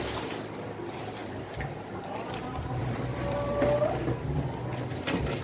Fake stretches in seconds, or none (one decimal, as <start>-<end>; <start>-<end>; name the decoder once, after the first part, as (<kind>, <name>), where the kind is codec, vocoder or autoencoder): 1.2-4.4 (vocoder, BigVGAN v2)